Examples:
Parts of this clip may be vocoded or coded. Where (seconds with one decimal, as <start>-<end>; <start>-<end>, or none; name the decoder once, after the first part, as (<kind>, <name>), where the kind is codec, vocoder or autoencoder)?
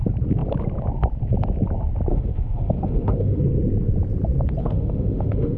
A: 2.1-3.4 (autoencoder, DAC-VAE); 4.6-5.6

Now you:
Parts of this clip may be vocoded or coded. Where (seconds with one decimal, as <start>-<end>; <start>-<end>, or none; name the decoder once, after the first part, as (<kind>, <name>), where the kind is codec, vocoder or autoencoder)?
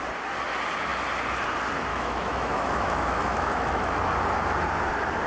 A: 1.9-4.0 (autoencoder, DAC-VAE)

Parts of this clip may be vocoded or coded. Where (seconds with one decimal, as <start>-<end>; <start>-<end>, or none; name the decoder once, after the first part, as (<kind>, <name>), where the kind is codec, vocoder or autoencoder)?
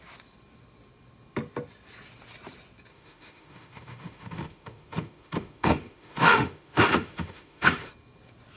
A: 2.9-7.9 (autoencoder, DAC-VAE)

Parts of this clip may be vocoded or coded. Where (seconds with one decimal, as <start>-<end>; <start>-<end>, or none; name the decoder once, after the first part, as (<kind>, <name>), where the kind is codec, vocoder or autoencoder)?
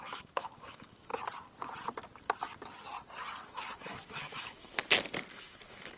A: 0.0-1.1 (autoencoder, DAC-VAE); 3.4-4.8; 5.3-6.0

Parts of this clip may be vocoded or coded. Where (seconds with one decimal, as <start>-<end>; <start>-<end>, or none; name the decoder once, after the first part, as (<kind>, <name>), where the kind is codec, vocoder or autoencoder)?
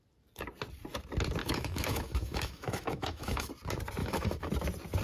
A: 1.4-3.5 (autoencoder, DAC-VAE); 4.0-4.5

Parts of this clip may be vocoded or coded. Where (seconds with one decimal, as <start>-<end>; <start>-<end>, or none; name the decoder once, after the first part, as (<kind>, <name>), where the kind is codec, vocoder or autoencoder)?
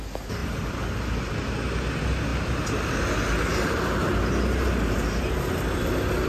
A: none